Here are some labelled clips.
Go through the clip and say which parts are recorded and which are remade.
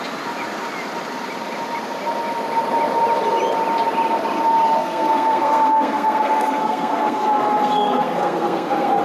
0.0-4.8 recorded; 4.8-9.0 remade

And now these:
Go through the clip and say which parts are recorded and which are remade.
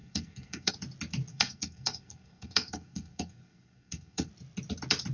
0.0-0.7 remade; 0.7-1.3 recorded; 1.3-4.3 remade; 4.3-5.1 recorded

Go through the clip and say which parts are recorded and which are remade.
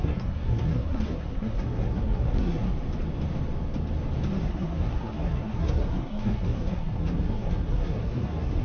0.0-2.7 remade; 2.7-4.4 recorded; 4.4-8.6 remade